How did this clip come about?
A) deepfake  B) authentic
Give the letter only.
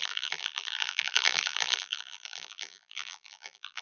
A